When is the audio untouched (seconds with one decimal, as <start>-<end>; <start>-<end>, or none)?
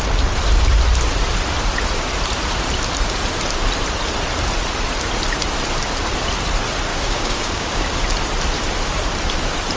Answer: 0.0-6.9; 7.9-9.8